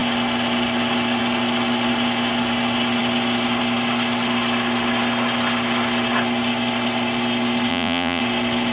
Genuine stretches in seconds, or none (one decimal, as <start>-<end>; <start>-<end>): 0.0-7.7; 8.2-8.7